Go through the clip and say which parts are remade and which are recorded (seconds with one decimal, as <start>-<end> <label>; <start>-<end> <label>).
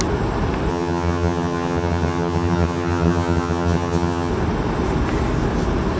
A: 0.0-0.7 recorded; 0.7-4.3 remade; 4.3-6.0 recorded